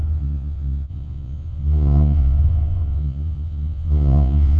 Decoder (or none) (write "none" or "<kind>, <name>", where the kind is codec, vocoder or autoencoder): vocoder, Vocos